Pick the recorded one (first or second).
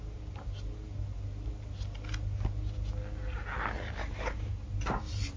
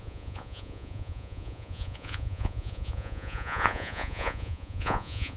first